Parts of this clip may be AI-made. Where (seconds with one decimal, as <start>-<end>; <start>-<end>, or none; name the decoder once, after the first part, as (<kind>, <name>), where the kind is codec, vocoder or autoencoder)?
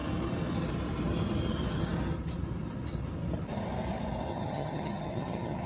4.3-5.7 (vocoder, HiFi-GAN)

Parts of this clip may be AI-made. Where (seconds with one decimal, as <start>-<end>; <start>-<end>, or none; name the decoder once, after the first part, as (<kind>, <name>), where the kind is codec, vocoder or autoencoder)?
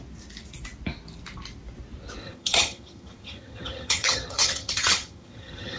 2.2-5.8 (vocoder, HiFi-GAN)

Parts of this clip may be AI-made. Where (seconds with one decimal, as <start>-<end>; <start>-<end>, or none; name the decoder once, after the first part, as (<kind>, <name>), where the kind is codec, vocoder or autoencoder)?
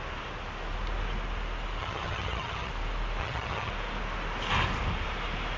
1.8-2.7 (vocoder, HiFi-GAN); 3.2-3.7